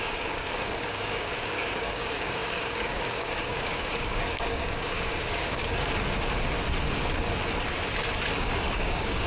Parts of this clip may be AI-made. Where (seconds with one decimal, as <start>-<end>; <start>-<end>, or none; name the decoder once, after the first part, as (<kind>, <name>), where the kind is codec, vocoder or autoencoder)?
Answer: 0.0-5.6 (codec, DAC); 8.3-9.3